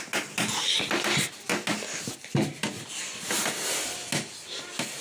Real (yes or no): yes